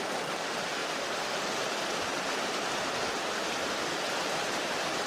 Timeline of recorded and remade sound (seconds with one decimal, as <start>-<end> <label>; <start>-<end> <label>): 0.0-5.1 recorded